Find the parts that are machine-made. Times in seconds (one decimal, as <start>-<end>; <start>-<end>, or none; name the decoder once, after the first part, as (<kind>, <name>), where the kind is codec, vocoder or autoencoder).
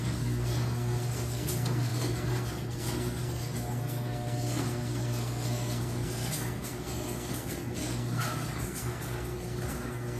0.0-10.2 (codec, SNAC)